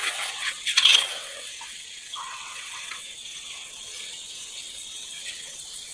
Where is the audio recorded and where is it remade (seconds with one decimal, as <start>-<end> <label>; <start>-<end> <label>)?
0.0-5.9 remade